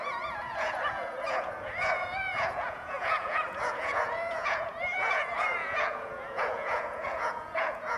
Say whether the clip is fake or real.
fake